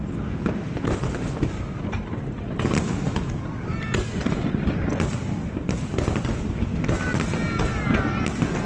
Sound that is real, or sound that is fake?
real